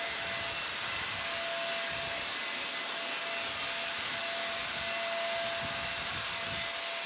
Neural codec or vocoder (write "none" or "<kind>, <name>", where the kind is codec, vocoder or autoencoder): none